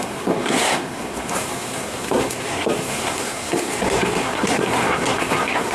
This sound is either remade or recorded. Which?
remade